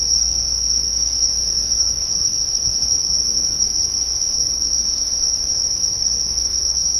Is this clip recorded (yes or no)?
no